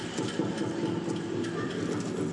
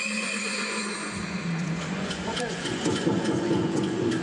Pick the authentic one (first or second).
first